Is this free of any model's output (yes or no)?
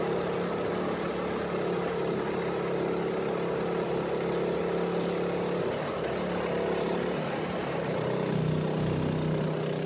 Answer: yes